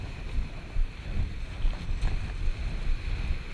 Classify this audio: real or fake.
real